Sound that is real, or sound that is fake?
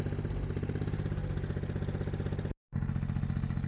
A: real